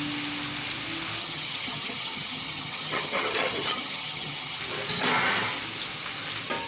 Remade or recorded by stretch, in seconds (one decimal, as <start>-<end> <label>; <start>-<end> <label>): 0.0-1.2 recorded; 1.2-4.6 remade; 4.6-6.7 recorded